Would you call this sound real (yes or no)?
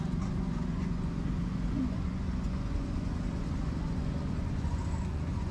no